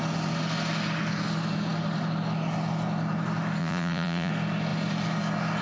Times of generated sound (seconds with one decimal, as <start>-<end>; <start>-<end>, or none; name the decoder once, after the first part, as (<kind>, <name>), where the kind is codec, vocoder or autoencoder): 3.6-4.3 (vocoder, Vocos)